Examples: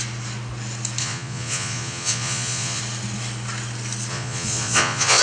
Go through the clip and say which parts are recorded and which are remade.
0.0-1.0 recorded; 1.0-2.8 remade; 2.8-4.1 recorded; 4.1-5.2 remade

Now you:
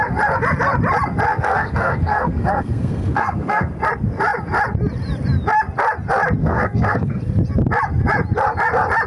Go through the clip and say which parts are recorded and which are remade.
0.0-1.3 recorded; 1.3-3.7 remade; 3.7-6.4 recorded; 6.4-7.2 remade; 7.2-9.1 recorded

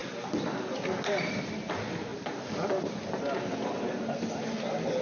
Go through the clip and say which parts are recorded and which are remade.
0.0-5.0 recorded

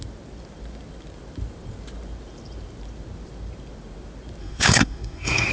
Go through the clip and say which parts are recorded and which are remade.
0.0-4.4 recorded; 4.4-5.5 remade

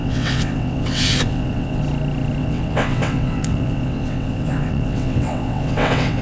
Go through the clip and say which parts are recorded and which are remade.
0.0-1.8 remade; 1.8-2.4 recorded; 2.4-6.2 remade

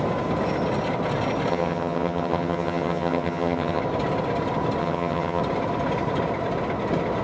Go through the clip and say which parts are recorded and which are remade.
0.0-1.5 recorded; 1.5-3.8 remade; 3.8-4.8 recorded; 4.8-5.4 remade; 5.4-7.2 recorded

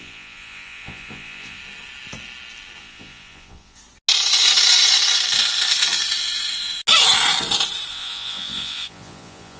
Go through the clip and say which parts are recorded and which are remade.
0.0-1.6 remade; 1.6-2.8 recorded; 2.8-3.8 remade; 3.8-7.9 recorded; 7.9-9.6 remade

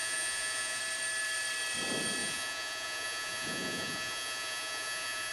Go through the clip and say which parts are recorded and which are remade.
0.0-0.8 remade; 0.8-2.2 recorded; 2.2-5.3 remade